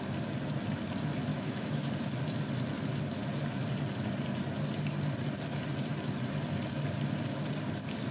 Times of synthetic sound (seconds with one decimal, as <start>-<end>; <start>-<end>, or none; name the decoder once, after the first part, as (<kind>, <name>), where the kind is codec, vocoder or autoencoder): 1.3-1.8 (autoencoder, DAC-VAE)